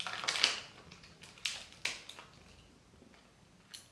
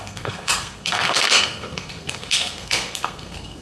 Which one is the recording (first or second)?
first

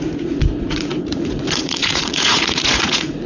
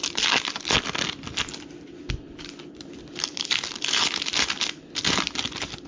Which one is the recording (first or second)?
second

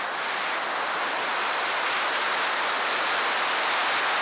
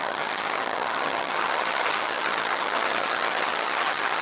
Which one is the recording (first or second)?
first